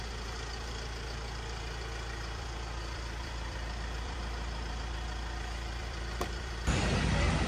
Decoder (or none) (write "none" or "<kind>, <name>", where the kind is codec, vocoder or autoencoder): vocoder, BigVGAN v2